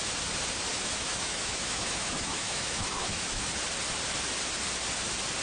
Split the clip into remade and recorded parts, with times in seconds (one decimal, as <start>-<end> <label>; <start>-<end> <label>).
0.0-0.7 recorded; 0.7-3.5 remade; 3.5-5.4 recorded